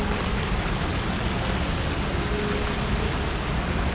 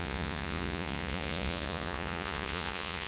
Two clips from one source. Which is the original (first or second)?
first